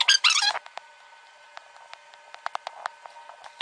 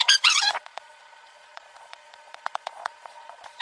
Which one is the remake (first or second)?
second